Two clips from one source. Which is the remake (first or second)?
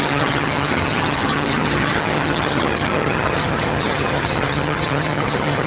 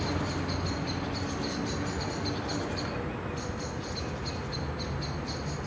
first